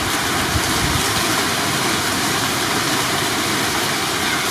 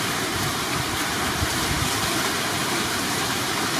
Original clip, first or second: first